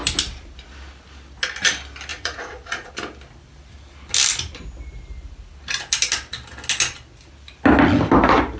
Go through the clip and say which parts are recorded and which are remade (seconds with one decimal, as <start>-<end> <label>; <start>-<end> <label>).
0.0-2.1 recorded; 2.1-2.9 remade; 2.9-8.6 recorded